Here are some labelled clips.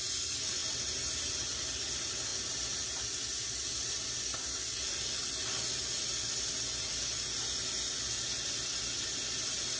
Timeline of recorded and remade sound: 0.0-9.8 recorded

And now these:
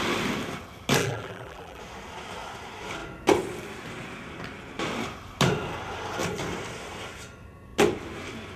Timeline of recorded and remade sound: 0.0-1.0 recorded; 1.0-1.8 remade; 1.8-8.6 recorded